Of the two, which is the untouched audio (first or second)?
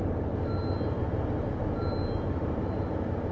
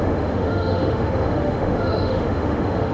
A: first